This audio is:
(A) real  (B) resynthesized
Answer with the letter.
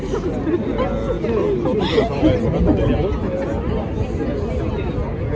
A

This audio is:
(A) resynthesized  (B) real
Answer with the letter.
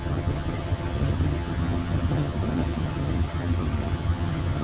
A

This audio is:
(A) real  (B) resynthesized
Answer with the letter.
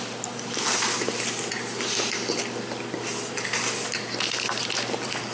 A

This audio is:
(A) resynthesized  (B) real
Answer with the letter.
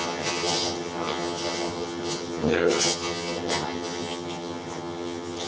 A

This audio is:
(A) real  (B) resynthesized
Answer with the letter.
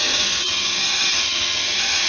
B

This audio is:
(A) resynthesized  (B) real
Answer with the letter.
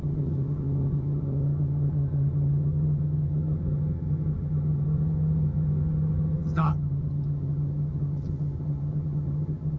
A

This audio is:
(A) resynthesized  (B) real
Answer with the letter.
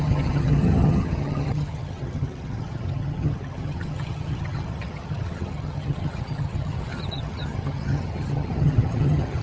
A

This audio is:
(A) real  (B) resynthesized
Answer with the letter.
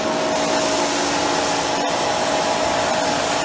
A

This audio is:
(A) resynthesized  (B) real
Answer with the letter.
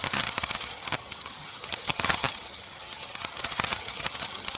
A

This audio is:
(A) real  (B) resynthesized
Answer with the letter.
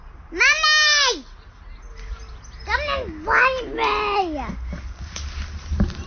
A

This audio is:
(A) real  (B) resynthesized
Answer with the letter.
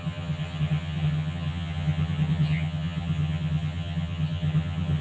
B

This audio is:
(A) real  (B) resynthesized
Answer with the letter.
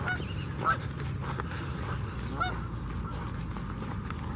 A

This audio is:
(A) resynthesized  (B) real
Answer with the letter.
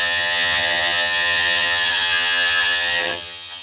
A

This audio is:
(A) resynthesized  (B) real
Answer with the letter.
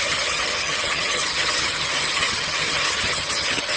A